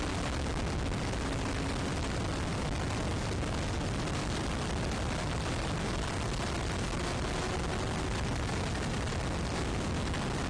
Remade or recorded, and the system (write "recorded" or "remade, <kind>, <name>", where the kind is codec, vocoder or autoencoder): recorded